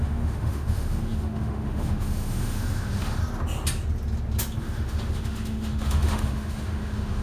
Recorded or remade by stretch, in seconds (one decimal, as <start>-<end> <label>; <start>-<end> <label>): 0.0-3.2 remade; 3.2-4.6 recorded; 4.6-7.2 remade